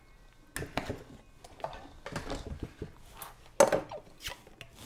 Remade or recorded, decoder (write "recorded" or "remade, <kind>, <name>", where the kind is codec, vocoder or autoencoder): recorded